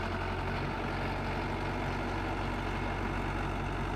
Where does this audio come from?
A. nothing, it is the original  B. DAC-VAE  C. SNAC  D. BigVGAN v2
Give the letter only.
A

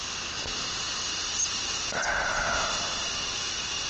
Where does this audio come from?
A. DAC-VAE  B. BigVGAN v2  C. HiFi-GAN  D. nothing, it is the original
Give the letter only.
D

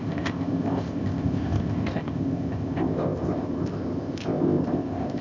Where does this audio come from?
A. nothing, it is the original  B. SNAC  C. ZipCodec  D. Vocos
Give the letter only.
C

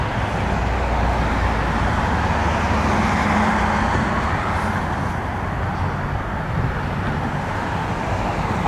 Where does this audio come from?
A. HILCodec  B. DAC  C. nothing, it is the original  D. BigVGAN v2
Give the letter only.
C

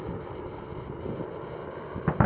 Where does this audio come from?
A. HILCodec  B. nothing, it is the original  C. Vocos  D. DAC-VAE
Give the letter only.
B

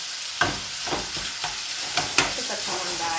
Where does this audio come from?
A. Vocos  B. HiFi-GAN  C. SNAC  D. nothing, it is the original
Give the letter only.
D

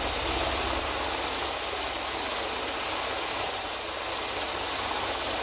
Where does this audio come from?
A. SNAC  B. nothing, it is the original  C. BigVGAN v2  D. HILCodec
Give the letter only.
B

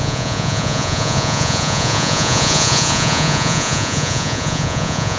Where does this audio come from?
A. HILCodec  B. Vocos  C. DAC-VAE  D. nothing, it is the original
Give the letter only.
B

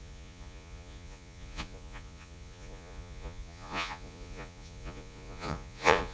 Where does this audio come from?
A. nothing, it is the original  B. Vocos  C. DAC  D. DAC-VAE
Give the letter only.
B